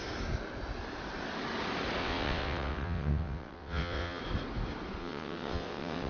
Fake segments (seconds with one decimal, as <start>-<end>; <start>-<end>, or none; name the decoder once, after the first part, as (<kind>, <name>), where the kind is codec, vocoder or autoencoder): 2.0-4.2 (vocoder, WaveNeXt); 5.0-6.1